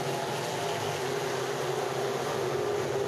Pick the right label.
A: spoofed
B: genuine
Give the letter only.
B